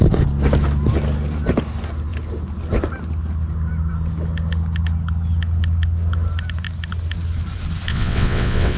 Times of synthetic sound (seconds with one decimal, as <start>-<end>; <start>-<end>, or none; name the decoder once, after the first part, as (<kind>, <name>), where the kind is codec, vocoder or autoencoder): 7.9-8.8 (vocoder, WaveNeXt)

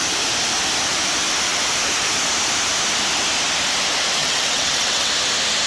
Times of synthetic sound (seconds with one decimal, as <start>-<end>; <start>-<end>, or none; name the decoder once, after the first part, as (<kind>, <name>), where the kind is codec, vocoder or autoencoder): 4.2-5.1 (vocoder, WaveNeXt)

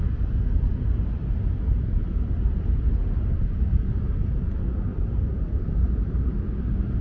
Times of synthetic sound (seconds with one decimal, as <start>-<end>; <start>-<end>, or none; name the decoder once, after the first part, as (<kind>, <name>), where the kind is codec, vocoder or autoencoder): 4.9-6.3 (vocoder, BigVGAN v2)

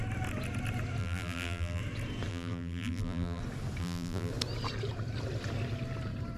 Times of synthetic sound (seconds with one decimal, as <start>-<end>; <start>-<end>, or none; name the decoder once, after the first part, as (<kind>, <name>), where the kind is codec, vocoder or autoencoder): 1.0-1.8 (vocoder, BigVGAN v2); 2.3-3.4; 3.8-4.3